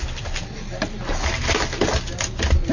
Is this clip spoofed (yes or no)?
no